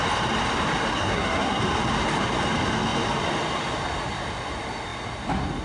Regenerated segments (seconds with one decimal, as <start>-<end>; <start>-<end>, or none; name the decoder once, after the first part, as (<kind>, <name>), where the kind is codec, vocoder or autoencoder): 0.9-1.6 (codec, SNAC)